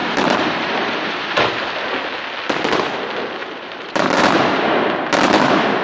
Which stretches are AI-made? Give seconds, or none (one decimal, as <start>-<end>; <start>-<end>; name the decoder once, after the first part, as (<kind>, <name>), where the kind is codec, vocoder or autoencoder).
0.0-1.5 (vocoder, BigVGAN v2); 3.4-4.2